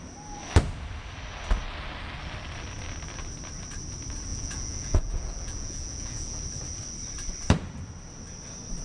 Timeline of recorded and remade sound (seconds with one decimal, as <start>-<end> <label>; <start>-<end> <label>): 0.0-4.3 recorded; 4.3-6.4 remade; 6.4-8.8 recorded